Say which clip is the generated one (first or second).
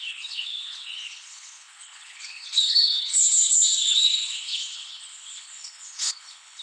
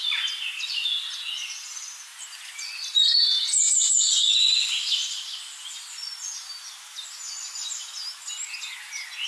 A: first